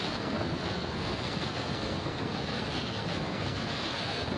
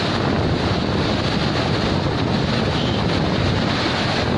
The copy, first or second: first